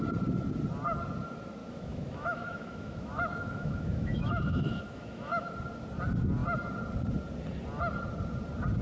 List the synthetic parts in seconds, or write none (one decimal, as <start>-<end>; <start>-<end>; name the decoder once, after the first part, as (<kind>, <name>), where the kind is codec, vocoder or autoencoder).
1.6-5.5 (autoencoder, DAC-VAE)